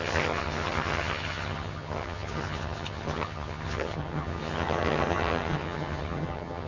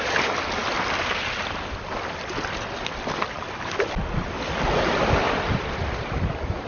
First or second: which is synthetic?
first